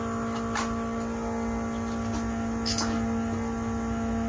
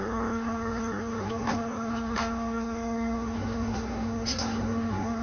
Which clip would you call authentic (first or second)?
first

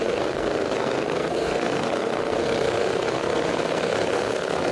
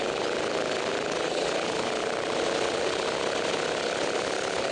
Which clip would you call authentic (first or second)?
second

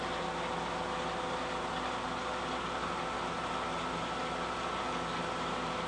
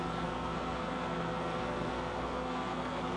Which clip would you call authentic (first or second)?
first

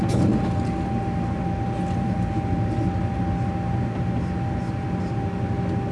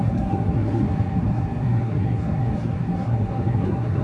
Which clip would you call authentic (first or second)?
first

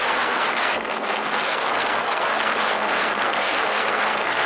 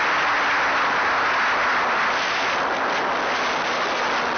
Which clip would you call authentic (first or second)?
second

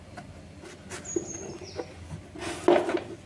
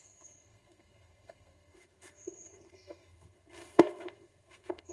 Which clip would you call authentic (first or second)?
first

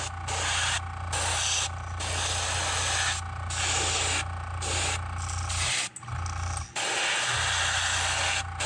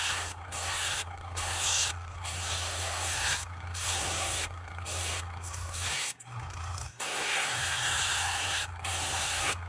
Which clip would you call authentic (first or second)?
first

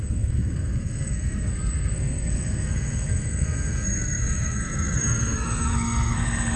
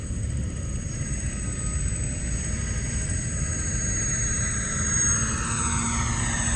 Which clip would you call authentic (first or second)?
second